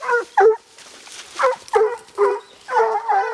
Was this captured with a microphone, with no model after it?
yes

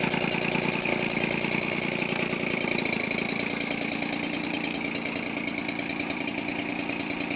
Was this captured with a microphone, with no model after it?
yes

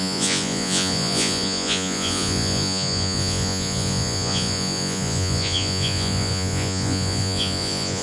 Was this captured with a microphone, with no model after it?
no